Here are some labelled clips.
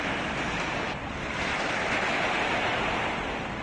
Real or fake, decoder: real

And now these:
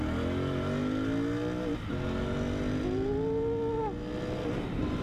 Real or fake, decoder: real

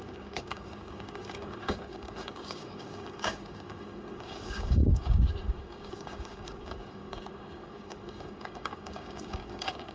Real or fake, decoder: fake, codec, DAC